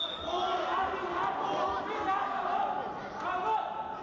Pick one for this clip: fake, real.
real